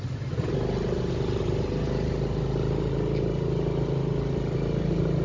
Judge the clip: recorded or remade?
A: recorded